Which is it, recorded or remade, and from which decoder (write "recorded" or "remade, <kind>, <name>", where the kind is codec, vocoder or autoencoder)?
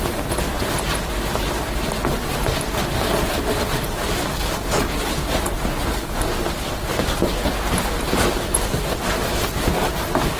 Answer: recorded